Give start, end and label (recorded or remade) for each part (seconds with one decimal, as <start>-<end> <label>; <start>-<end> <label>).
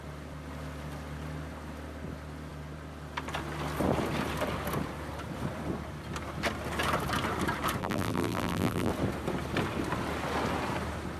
0.0-7.8 recorded; 7.8-8.9 remade; 8.9-11.2 recorded